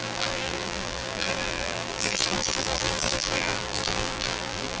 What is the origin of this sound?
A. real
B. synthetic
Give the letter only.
B